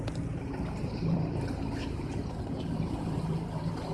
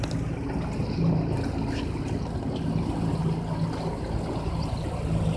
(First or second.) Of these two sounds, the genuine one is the second